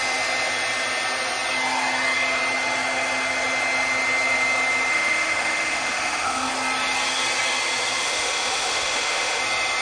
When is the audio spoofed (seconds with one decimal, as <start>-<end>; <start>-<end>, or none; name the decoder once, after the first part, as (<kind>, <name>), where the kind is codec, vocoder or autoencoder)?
4.9-6.5 (autoencoder, DAC-VAE); 8.0-9.4